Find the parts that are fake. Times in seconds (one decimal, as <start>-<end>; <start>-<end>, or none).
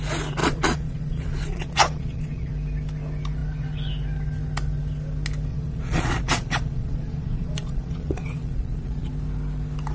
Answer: 0.4-2.5; 5.5-9.1